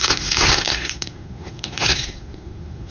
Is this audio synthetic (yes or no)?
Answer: yes